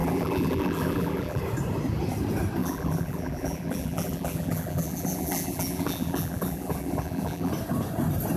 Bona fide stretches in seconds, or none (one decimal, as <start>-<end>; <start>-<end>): 1.4-2.6; 7.5-8.4